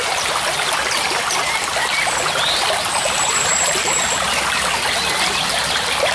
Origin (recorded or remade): remade